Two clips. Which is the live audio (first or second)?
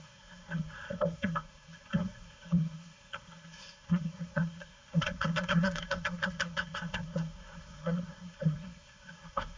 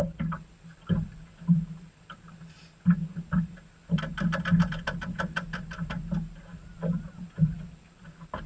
second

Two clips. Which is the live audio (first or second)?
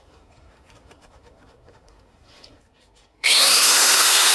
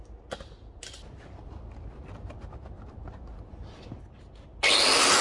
second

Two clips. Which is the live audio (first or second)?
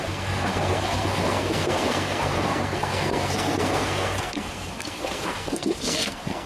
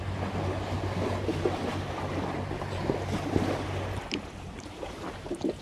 second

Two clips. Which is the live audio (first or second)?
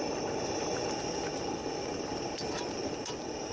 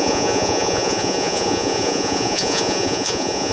first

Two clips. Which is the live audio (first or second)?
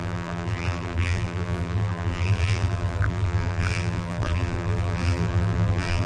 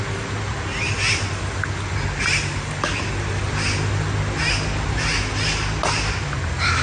second